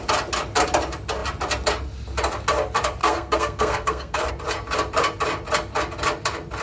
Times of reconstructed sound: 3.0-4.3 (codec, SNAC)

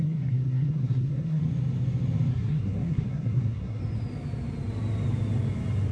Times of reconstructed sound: 0.0-1.4 (codec, SNAC); 2.3-3.8

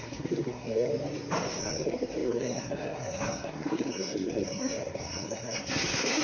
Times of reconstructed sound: 0.0-0.9 (codec, SNAC); 1.6-6.2

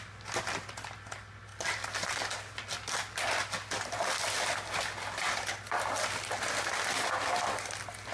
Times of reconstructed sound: none

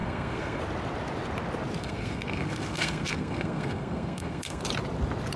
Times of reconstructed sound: 0.0-0.6 (codec, SNAC); 1.8-4.6

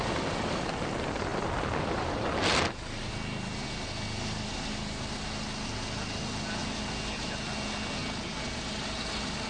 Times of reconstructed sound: none

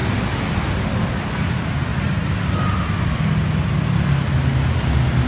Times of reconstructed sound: none